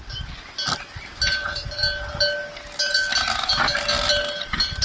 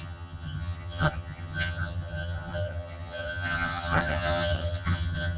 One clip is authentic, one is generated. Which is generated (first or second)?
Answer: second